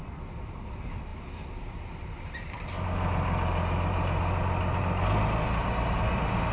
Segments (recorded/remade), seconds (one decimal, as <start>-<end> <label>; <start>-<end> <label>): 0.0-6.5 recorded

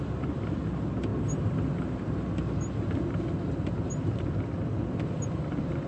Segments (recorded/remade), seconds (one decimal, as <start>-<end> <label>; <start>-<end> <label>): 0.0-5.9 recorded

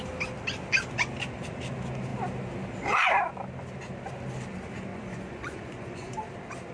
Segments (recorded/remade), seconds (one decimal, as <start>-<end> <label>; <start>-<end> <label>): 0.0-4.9 recorded; 4.9-6.1 remade; 6.1-6.7 recorded